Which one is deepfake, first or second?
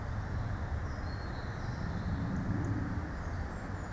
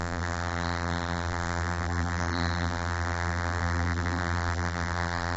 second